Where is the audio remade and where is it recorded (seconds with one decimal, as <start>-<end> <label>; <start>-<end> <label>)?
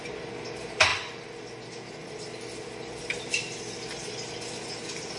0.0-5.2 recorded